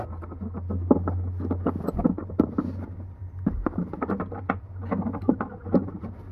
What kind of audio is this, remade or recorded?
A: recorded